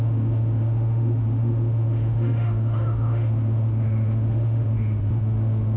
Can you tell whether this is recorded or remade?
remade